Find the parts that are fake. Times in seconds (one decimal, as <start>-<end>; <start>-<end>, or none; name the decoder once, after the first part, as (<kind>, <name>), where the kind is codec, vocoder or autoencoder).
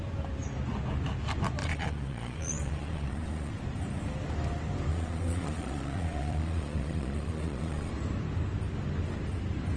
1.6-3.5 (vocoder, Vocos); 4.9-7.9